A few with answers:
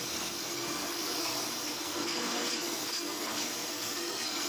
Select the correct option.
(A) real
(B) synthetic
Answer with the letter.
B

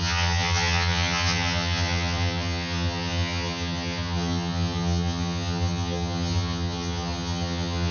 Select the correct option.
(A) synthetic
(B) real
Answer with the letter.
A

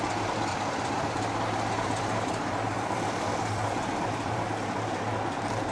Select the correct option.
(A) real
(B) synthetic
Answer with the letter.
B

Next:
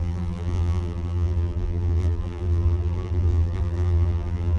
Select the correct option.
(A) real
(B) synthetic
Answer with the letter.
B